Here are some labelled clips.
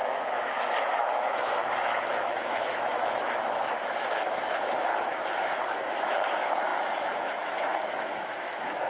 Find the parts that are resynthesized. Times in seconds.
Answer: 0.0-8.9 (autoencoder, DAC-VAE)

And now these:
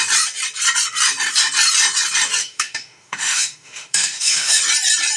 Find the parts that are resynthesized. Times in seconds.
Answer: 2.4-4.6 (autoencoder, DAC-VAE)

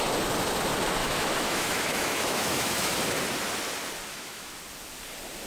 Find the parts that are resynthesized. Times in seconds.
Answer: 1.0-2.9 (autoencoder, DAC-VAE); 4.1-4.6

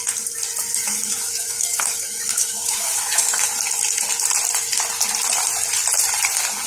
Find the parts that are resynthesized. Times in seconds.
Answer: 0.7-3.5 (autoencoder, DAC-VAE)

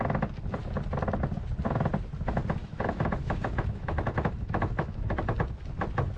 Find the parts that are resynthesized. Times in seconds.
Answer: 2.6-5.2 (autoencoder, DAC-VAE)

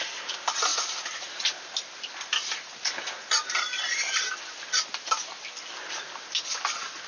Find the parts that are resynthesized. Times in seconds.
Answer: none